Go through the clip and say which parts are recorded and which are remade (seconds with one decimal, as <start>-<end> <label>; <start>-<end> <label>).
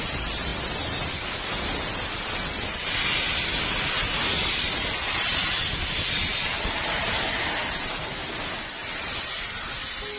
0.0-0.5 remade; 0.5-1.1 recorded; 1.1-8.8 remade; 8.8-9.5 recorded; 9.5-10.2 remade